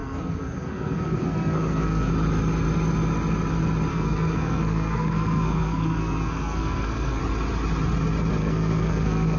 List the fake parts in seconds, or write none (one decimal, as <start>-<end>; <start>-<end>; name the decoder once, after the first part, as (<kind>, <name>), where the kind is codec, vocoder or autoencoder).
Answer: 0.0-2.1 (codec, SNAC); 3.9-7.2; 8.4-9.4